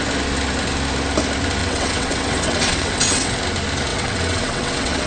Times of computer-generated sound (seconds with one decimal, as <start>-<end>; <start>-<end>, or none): 1.6-3.4; 3.9-5.1